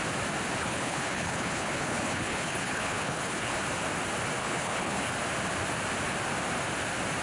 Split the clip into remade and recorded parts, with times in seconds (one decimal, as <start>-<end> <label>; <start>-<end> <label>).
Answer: 0.0-0.6 recorded; 0.6-3.6 remade; 3.6-4.4 recorded; 4.4-5.1 remade; 5.1-7.2 recorded